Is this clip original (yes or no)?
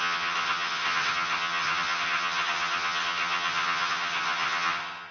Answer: no